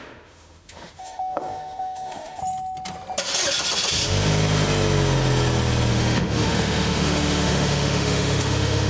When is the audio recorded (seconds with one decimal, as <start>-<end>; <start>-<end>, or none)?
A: 2.4-5.9